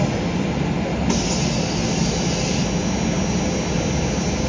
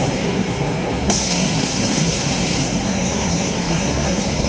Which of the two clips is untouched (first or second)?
first